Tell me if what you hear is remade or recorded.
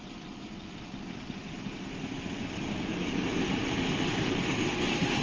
recorded